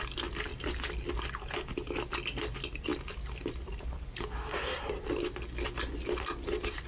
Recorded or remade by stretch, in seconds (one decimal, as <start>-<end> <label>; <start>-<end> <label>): 0.0-6.9 recorded